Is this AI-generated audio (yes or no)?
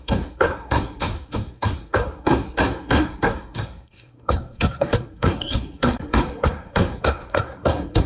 yes